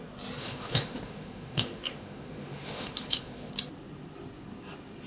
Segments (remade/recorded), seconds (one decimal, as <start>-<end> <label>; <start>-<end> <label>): 0.0-0.4 recorded; 0.4-3.5 remade; 3.5-5.1 recorded